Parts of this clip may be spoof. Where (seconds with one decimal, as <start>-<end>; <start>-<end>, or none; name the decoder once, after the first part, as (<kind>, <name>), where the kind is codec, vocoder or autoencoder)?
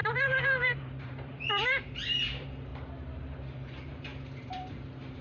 0.0-2.7 (vocoder, BigVGAN v2); 3.2-5.2